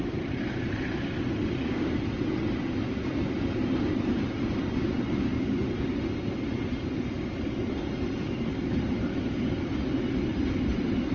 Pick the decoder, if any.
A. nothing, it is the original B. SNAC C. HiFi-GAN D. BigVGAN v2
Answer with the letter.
A